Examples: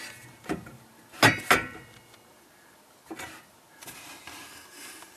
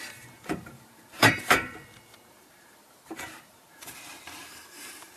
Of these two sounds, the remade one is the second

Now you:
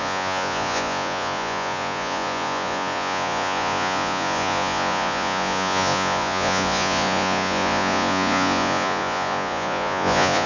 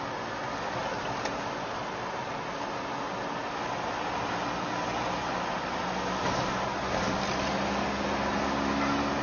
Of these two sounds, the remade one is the first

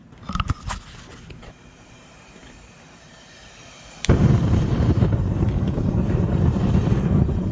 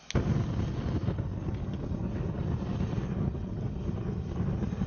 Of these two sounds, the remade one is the first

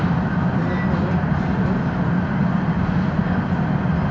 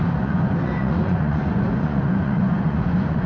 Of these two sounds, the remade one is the second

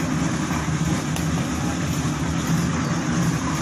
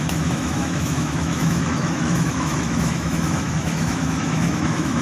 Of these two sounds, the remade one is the second